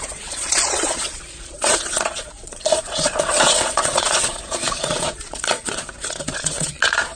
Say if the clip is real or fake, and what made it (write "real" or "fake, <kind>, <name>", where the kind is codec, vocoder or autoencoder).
fake, vocoder, Vocos